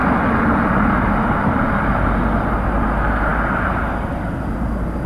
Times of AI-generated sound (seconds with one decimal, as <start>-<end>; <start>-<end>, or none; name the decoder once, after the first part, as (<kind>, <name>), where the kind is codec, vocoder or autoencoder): 0.0-2.2 (vocoder, BigVGAN v2)